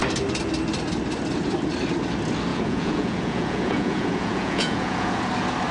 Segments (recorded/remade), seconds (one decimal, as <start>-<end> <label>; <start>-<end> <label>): 0.0-2.5 recorded; 2.5-5.3 remade; 5.3-5.7 recorded